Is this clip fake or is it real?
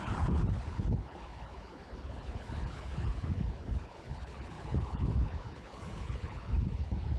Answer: fake